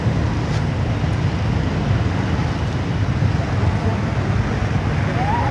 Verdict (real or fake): real